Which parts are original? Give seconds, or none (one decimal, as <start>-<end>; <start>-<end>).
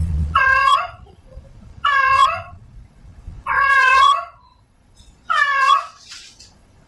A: none